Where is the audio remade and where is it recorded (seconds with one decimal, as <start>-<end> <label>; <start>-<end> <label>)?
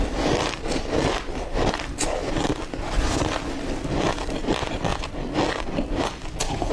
0.0-4.9 remade; 4.9-6.0 recorded; 6.0-6.7 remade